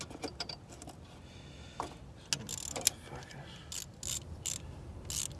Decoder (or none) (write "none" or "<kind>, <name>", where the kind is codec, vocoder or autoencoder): none